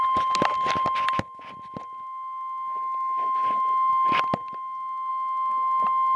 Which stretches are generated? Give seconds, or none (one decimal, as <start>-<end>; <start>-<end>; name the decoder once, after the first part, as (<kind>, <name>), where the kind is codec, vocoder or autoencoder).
none